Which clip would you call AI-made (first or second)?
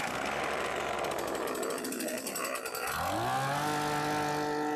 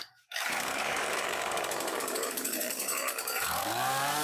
second